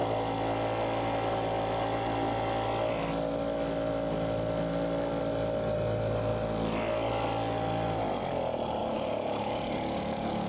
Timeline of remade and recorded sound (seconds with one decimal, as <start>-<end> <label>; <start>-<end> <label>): 0.0-8.8 recorded; 8.8-10.5 remade